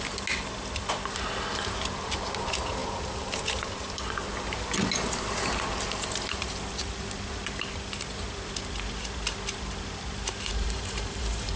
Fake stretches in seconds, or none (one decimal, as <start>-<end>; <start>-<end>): 10.5-11.6